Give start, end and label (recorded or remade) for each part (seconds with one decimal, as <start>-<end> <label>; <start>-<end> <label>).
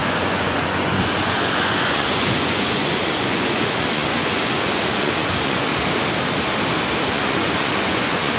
0.0-5.7 remade; 5.7-7.0 recorded; 7.0-8.4 remade